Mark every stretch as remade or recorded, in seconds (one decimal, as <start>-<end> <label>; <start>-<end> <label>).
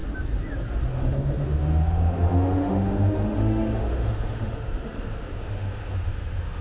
0.0-0.9 recorded; 0.9-6.6 remade